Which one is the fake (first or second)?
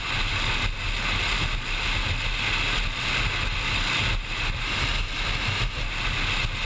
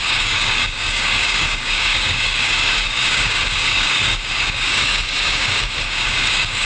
second